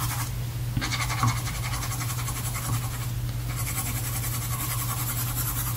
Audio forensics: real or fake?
real